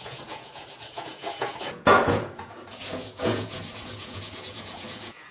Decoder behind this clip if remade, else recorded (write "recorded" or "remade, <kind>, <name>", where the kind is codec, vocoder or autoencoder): remade, vocoder, Vocos